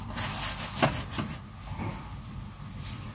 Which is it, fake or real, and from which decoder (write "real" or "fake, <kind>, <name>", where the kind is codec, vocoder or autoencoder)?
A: real